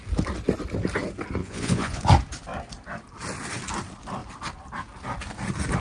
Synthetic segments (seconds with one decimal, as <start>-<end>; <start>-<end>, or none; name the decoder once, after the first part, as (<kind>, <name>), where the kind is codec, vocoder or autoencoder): 1.4-2.0 (vocoder, Vocos)

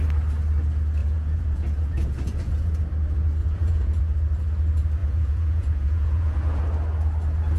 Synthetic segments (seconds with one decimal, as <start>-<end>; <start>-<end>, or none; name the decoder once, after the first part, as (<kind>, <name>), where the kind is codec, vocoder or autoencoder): 1.0-2.8 (vocoder, Vocos); 3.4-4.0; 5.0-6.6